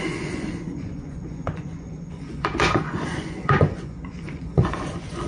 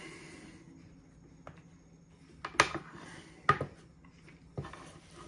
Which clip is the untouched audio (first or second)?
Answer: second